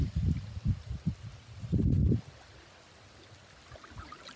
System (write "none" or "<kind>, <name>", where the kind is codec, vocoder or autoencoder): none